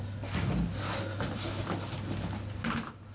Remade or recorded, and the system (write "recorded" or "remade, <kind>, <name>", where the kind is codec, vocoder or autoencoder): recorded